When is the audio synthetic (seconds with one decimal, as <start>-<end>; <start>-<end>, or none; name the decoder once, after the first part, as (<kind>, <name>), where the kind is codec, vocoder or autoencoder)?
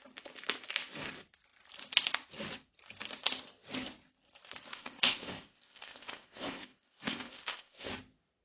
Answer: 4.7-7.9 (codec, ZipCodec)